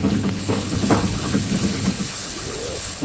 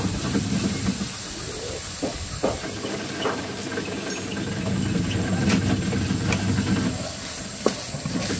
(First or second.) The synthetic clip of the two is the first